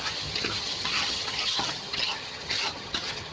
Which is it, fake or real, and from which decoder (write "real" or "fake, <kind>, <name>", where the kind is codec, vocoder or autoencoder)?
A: fake, vocoder, HiFi-GAN